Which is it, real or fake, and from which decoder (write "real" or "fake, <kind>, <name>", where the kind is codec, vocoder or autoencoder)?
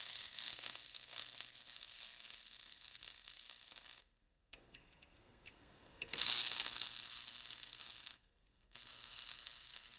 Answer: fake, codec, SNAC